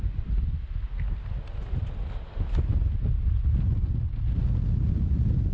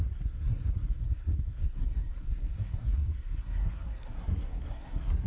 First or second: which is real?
first